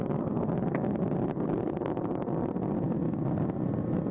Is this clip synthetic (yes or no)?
no